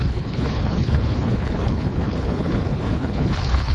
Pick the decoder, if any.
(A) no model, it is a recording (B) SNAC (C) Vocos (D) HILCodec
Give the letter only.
D